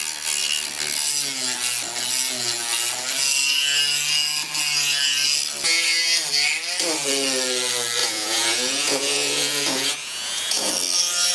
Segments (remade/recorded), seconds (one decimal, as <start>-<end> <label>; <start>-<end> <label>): 0.0-8.0 recorded; 8.0-10.7 remade; 10.7-11.3 recorded